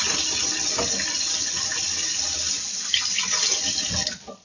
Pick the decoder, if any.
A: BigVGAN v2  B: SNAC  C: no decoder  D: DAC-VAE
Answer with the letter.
C